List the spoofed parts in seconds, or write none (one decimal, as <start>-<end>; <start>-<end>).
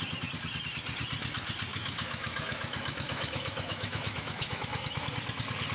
1.7-5.1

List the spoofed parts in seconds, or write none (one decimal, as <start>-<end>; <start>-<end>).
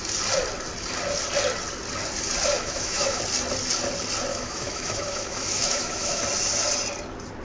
2.5-3.2; 4.3-6.2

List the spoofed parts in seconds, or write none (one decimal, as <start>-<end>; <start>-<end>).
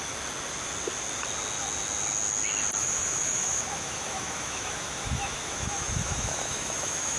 2.8-7.2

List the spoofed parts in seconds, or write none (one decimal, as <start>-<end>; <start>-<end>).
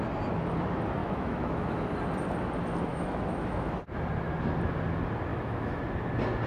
1.0-1.9; 2.9-3.8; 5.3-5.8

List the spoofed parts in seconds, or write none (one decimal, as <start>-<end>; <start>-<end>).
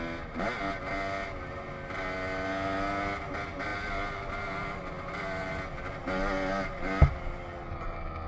none